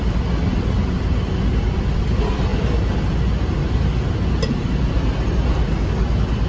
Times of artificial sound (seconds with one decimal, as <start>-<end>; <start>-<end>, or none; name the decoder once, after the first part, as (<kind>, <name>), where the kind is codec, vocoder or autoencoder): none